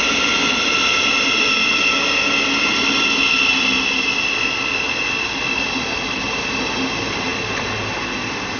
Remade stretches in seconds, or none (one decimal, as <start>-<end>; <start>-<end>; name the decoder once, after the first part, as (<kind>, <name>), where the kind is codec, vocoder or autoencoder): none